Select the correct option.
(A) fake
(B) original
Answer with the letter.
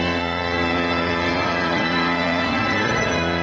A